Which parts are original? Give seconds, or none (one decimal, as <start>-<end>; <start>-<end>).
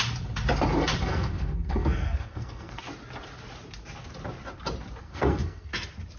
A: 0.0-1.1; 2.8-5.0; 5.7-6.2